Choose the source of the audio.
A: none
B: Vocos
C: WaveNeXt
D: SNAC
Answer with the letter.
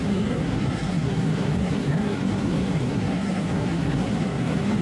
D